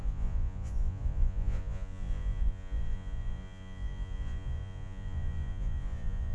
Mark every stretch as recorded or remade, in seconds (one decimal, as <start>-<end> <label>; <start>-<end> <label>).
0.0-6.3 remade